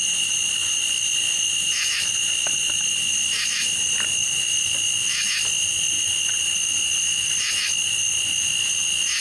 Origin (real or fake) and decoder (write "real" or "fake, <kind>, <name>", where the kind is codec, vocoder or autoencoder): real